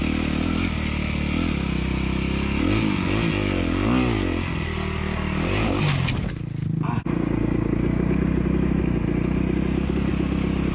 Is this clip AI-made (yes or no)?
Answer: no